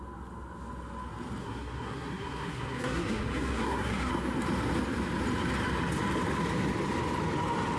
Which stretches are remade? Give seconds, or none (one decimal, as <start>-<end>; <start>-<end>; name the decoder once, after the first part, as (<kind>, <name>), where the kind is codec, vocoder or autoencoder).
1.4-4.1 (codec, SNAC)